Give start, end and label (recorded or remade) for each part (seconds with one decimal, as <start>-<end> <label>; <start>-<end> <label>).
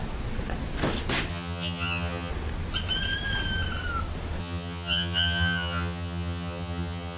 0.0-1.3 recorded; 1.3-2.3 remade; 2.3-4.4 recorded; 4.4-7.2 remade